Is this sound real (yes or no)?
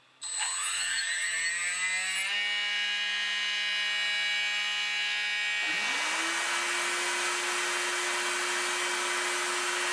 yes